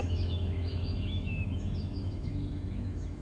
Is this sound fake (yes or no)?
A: yes